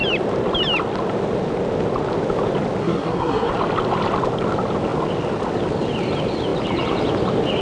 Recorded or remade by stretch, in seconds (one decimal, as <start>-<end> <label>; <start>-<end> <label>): 0.0-2.8 recorded; 2.8-3.5 remade; 3.5-7.6 recorded